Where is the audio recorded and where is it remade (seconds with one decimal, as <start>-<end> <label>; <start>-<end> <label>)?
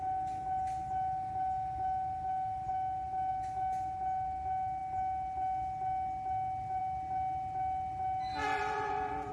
0.0-8.4 recorded; 8.4-9.3 remade